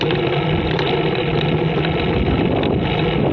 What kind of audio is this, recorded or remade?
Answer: recorded